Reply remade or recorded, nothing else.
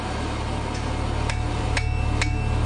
recorded